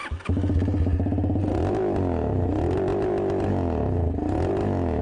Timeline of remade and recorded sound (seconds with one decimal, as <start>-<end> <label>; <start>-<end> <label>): 0.0-5.0 recorded